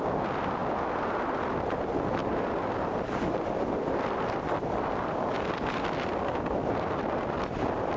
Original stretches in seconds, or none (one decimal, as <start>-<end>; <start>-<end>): 0.0-8.0